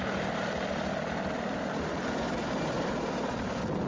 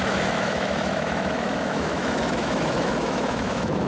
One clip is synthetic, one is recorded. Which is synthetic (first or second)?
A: second